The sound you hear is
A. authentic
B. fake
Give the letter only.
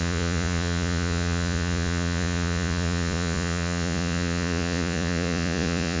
B